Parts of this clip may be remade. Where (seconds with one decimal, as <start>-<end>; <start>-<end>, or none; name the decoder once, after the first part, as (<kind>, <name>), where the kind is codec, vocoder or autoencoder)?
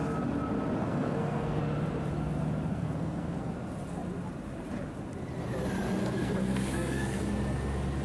0.8-1.6 (codec, SNAC); 2.7-3.5; 6.0-7.2